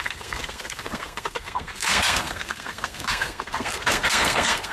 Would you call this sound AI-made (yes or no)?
yes